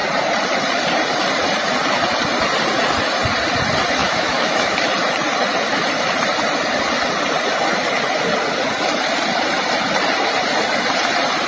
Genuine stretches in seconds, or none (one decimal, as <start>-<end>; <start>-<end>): 0.0-4.0; 4.9-11.5

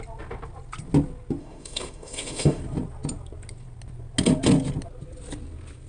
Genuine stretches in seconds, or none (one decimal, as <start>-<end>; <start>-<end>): 0.0-1.4; 2.6-5.9

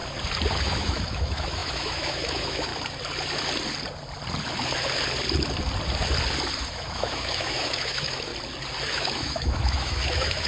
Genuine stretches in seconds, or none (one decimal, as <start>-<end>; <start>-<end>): 0.0-0.6; 2.7-6.7; 8.3-8.9